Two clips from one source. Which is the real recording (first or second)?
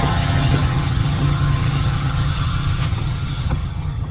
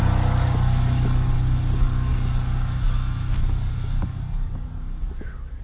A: second